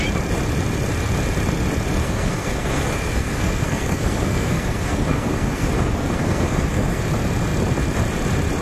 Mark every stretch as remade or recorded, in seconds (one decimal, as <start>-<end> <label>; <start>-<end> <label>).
0.0-2.0 recorded; 2.0-7.0 remade; 7.0-8.6 recorded